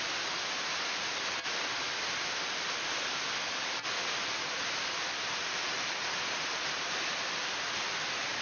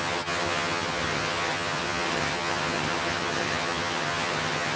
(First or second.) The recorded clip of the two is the first